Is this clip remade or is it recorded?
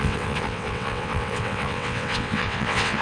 remade